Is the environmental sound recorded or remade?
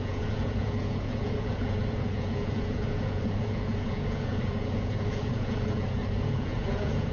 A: remade